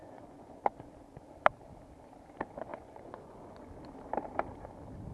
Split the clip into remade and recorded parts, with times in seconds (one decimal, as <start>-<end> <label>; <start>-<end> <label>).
0.0-0.6 remade; 0.6-2.7 recorded; 2.7-3.7 remade; 3.7-5.1 recorded